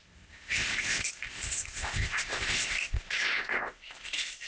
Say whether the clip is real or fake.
fake